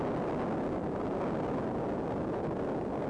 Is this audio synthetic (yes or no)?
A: no